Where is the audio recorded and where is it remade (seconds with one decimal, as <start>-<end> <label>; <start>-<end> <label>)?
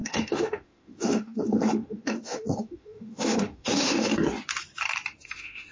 0.0-4.1 remade; 4.1-5.2 recorded; 5.2-5.7 remade